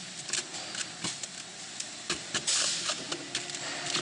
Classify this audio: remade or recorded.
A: recorded